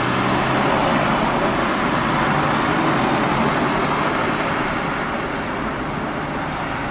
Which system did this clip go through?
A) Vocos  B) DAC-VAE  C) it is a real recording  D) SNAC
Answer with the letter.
C